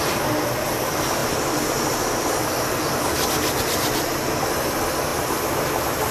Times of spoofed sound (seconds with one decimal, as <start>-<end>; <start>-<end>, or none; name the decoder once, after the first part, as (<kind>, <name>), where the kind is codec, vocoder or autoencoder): none